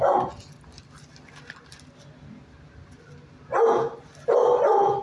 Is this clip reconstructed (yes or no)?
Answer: no